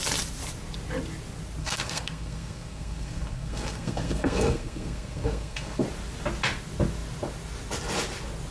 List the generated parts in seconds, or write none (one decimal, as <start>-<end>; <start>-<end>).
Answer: 1.6-5.8